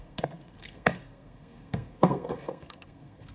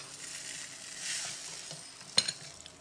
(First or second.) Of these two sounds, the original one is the second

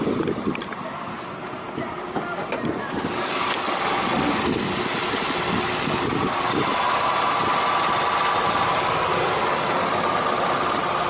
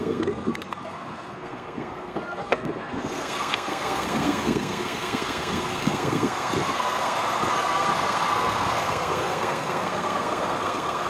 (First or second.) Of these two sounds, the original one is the first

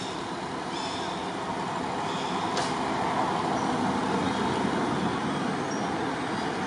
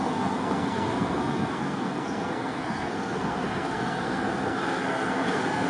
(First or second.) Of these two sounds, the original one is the first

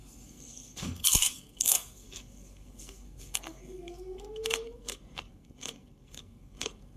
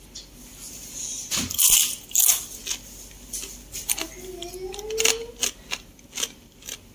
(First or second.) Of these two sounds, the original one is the second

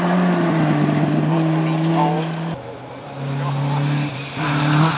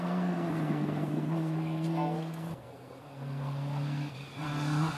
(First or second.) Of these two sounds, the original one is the first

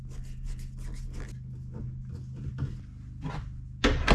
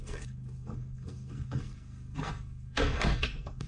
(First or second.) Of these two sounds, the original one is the first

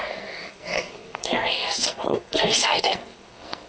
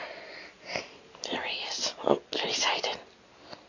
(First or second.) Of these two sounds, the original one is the second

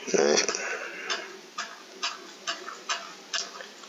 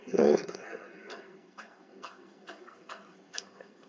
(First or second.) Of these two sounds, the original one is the first